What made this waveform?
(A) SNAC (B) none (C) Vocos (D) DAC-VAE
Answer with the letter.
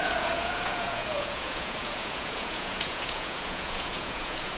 C